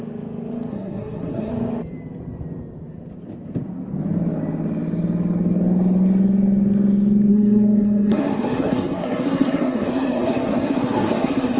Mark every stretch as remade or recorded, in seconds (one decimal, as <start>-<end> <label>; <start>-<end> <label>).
0.0-0.7 recorded; 0.7-1.5 remade; 1.5-7.3 recorded; 7.3-11.6 remade